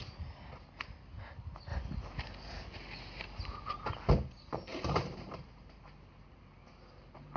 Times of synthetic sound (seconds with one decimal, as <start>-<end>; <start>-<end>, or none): 4.7-6.4